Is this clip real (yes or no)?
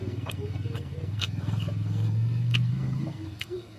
no